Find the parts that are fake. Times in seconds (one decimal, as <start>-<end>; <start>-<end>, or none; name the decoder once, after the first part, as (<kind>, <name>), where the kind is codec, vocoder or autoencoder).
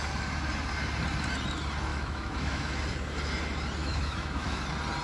1.9-2.8 (autoencoder, DAC-VAE); 3.8-4.6